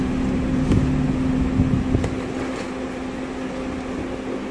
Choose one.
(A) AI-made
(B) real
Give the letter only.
B